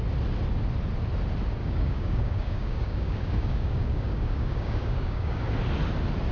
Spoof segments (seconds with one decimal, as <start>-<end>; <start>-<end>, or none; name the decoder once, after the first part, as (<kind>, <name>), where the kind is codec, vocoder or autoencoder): 1.6-5.4 (codec, DAC)